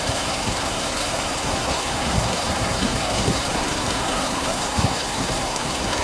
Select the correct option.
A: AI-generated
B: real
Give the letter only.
A